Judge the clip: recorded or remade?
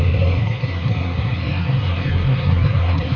remade